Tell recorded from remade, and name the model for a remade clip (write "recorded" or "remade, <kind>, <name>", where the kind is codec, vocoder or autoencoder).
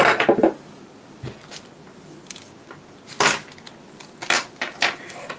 recorded